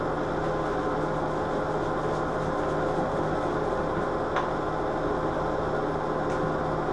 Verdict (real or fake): real